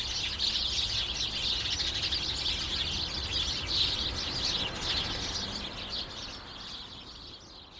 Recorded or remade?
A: recorded